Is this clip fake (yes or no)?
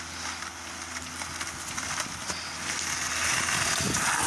no